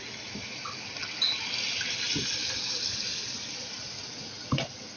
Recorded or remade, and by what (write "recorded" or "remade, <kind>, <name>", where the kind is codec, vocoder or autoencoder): recorded